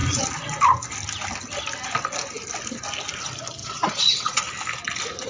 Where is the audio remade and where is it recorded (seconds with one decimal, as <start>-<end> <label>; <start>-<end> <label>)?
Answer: 0.0-3.6 recorded; 3.6-4.4 remade; 4.4-5.3 recorded